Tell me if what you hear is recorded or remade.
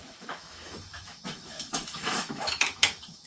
remade